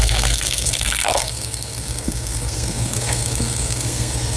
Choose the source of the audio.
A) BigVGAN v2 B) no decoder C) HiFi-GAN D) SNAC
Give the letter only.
D